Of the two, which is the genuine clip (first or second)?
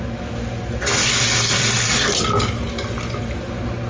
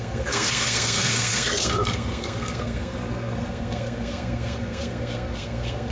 first